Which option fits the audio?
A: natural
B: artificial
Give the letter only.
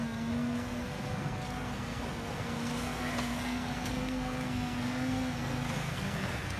B